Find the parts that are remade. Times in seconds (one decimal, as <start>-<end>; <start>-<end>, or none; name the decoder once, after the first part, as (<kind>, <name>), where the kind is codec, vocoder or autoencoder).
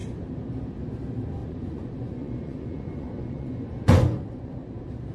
1.4-4.5 (vocoder, Vocos)